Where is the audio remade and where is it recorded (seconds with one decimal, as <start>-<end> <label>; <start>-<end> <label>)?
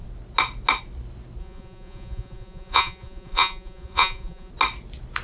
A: 0.0-1.4 recorded; 1.4-4.5 remade; 4.5-5.2 recorded